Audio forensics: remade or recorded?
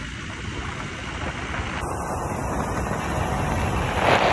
recorded